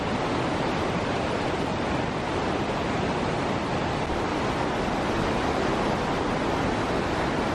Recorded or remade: recorded